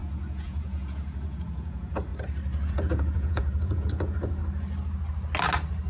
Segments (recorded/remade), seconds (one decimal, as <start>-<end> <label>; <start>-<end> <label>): 0.0-2.1 remade; 2.1-2.7 recorded; 2.7-4.4 remade; 4.4-5.9 recorded